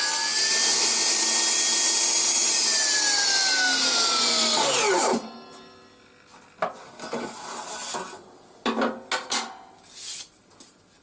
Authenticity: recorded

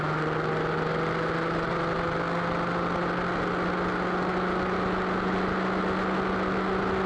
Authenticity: recorded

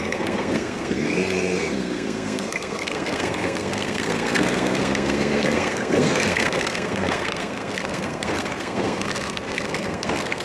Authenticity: remade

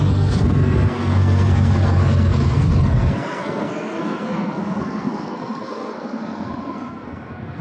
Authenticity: remade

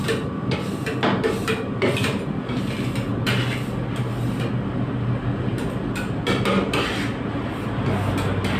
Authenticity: recorded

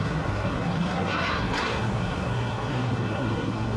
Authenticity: remade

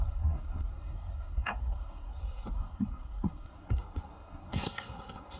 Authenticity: remade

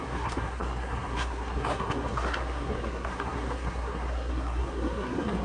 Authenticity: remade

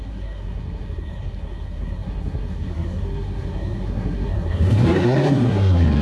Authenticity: remade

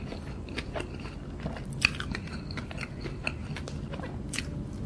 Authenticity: recorded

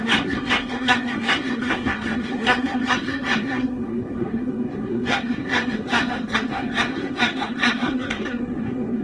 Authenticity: remade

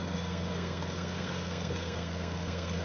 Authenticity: remade